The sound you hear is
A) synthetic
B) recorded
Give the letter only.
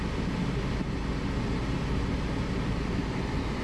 B